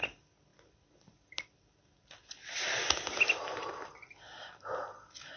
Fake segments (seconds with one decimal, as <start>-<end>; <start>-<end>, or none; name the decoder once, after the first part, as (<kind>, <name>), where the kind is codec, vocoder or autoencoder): none